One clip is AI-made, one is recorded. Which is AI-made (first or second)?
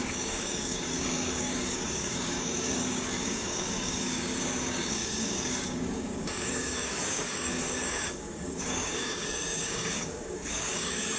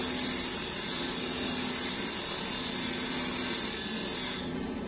first